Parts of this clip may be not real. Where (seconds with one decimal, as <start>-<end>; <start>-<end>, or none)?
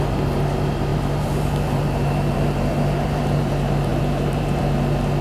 0.9-3.5; 3.9-4.6